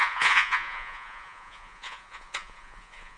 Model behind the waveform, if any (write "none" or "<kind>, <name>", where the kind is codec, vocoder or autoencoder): vocoder, Vocos